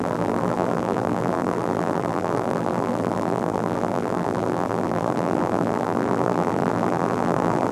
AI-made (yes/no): yes